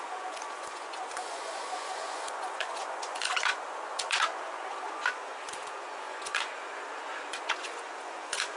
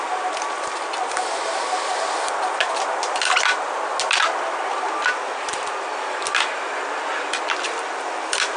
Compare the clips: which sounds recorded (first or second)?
second